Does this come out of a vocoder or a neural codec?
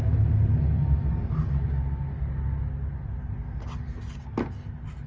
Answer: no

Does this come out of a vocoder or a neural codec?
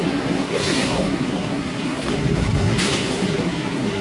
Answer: yes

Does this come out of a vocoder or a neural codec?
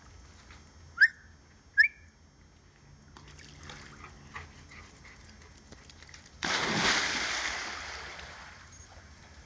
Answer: no